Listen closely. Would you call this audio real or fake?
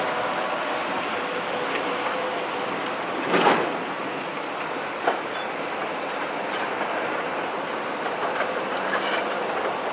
real